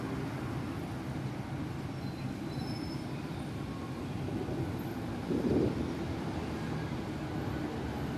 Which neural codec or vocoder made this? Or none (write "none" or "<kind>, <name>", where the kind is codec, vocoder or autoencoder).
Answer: none